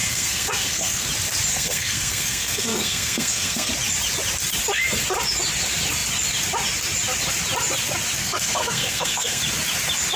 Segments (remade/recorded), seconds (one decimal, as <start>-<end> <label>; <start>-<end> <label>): 0.0-1.1 remade; 1.1-1.5 recorded; 1.5-3.7 remade; 3.7-8.2 recorded; 8.2-9.4 remade; 9.4-10.2 recorded